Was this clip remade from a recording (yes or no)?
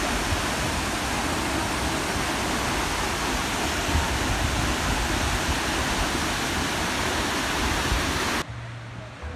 no